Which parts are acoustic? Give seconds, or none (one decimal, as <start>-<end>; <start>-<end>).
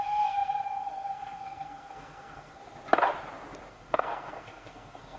2.6-3.7